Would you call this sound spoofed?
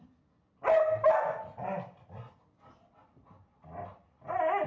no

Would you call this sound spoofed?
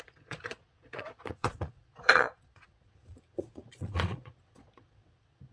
yes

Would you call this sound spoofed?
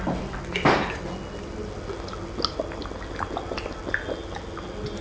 no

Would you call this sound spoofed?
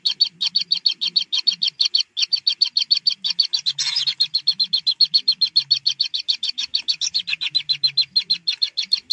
no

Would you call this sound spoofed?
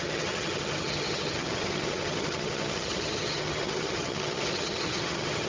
yes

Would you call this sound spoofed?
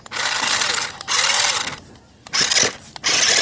no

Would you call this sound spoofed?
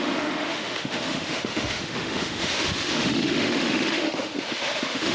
yes